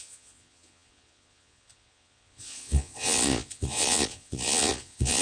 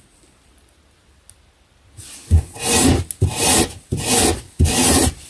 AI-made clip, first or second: first